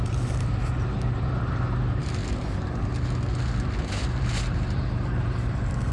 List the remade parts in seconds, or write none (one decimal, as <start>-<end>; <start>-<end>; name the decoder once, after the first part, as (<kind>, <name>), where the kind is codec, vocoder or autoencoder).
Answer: 0.0-2.2 (vocoder, BigVGAN v2); 4.2-5.9